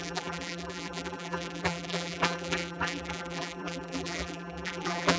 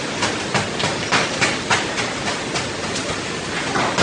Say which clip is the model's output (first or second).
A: first